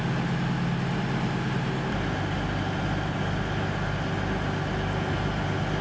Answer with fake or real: real